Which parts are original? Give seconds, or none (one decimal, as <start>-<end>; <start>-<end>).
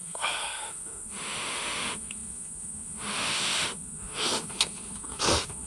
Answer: none